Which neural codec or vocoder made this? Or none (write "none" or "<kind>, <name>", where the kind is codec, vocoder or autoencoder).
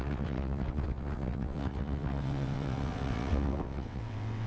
vocoder, WaveNeXt